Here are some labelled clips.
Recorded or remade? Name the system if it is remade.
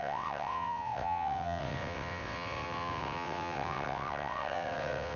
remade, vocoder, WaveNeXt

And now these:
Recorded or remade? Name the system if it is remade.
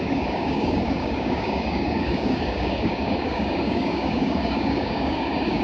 remade, codec, DAC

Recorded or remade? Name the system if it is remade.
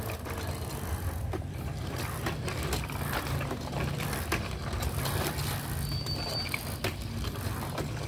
recorded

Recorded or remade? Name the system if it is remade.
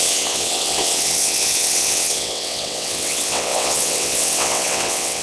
remade, vocoder, WaveNeXt